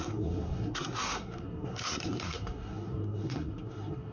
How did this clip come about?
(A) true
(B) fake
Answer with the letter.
B